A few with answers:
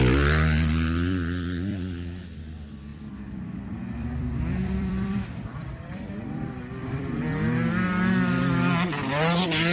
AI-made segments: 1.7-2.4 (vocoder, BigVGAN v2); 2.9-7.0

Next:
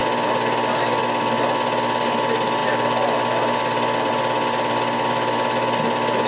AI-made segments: none

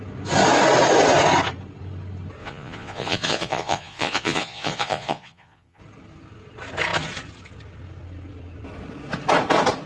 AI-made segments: 2.4-5.8 (vocoder, Vocos)

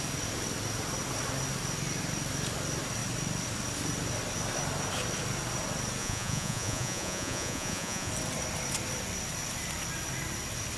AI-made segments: 6.0-8.1 (vocoder, Vocos)

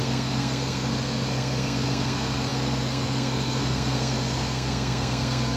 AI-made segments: 0.0-5.6 (codec, SNAC)

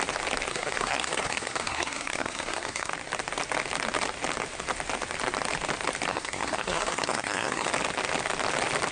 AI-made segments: 0.5-2.9 (codec, SNAC); 6.1-7.7

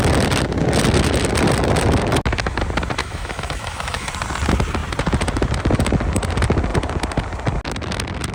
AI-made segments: 3.0-4.1 (autoencoder, DAC-VAE)

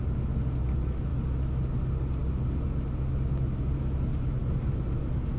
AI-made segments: 4.1-5.4 (vocoder, BigVGAN v2)